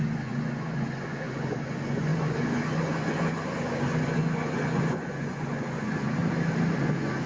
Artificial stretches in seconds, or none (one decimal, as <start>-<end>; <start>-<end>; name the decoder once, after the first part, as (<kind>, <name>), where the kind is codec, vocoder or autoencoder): 0.0-6.2 (vocoder, Vocos); 6.8-7.3